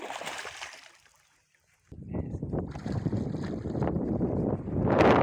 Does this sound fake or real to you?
real